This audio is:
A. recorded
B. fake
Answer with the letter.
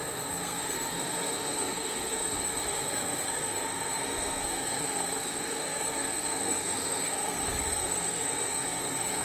B